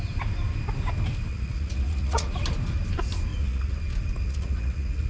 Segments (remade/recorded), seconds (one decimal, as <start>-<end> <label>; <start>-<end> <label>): 0.0-1.3 recorded; 1.3-2.3 remade; 2.3-3.3 recorded; 3.3-3.8 remade; 3.8-4.2 recorded; 4.2-5.1 remade